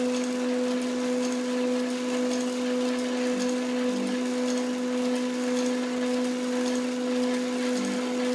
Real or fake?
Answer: real